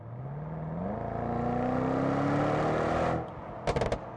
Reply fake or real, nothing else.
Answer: real